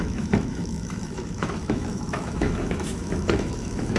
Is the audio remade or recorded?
remade